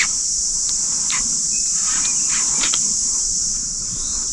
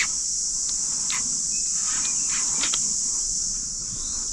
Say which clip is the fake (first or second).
first